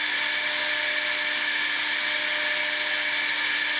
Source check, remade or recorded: recorded